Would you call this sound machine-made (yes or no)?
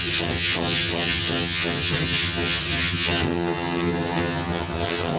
yes